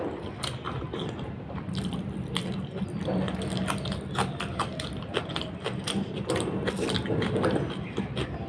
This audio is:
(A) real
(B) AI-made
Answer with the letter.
A